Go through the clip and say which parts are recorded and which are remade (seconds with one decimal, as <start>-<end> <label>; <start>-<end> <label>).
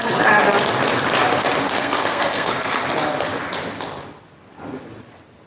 0.0-1.8 recorded; 1.8-2.8 remade; 2.8-5.5 recorded